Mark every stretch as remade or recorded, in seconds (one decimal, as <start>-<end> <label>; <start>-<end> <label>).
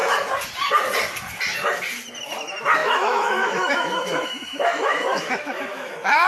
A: 0.0-2.8 recorded; 2.8-6.3 remade